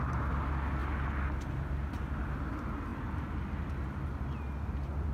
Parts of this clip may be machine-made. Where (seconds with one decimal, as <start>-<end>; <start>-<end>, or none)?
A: none

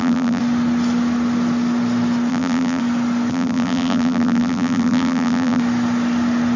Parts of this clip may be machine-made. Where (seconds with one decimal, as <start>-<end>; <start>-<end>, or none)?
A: 0.0-0.4; 2.3-2.8; 3.3-5.6

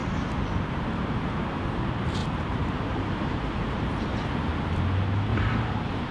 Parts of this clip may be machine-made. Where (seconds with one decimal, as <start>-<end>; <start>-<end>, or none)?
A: 0.0-0.8; 2.2-4.3; 5.3-6.1

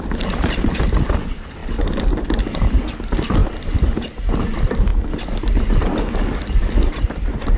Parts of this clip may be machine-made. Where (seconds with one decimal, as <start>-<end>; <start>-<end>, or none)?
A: 0.0-1.6; 2.4-4.9; 6.3-7.6

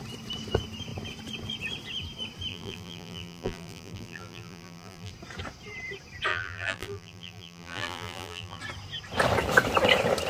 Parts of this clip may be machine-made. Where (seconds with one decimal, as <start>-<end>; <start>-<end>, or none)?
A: 2.5-5.1; 6.3-8.6

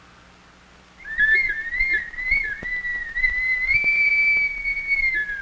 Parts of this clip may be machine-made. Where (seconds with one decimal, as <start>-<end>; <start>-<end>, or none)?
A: 2.9-4.1

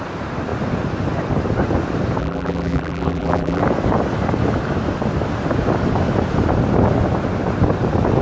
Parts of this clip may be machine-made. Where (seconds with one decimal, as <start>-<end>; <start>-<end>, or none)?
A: 2.2-3.6